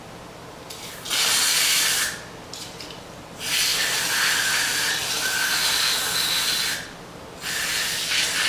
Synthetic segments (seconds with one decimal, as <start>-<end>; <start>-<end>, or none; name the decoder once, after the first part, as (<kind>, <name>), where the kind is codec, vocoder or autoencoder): 3.7-4.4 (vocoder, BigVGAN v2)